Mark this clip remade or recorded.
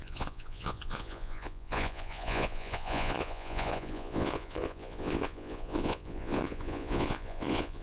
remade